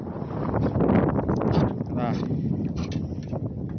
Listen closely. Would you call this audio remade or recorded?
recorded